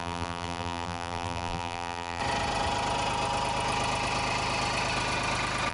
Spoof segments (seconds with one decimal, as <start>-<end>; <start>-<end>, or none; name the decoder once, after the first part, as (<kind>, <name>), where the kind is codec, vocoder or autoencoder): 0.0-2.2 (vocoder, BigVGAN v2)